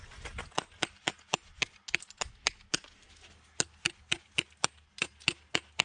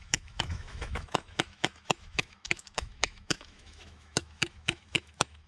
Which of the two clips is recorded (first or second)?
first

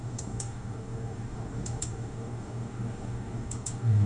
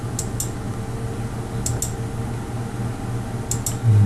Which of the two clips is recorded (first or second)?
second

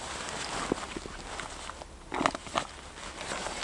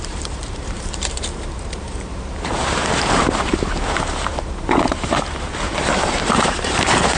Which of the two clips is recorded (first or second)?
first